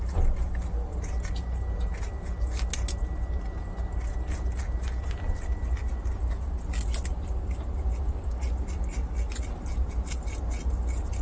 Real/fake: real